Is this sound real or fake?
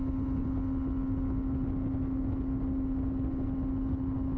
real